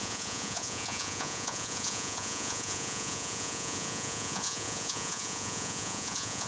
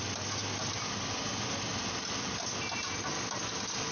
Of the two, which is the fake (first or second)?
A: first